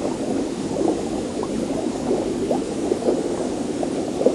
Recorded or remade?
remade